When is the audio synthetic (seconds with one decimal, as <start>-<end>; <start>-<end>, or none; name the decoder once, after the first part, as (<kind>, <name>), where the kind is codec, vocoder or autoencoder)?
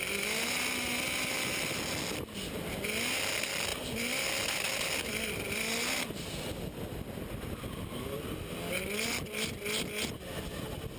none